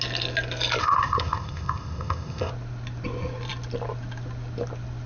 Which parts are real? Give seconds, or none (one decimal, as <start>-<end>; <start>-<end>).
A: 0.0-0.8; 2.5-5.1